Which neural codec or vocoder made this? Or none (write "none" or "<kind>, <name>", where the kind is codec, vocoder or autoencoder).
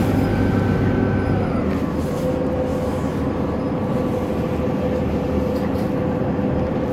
none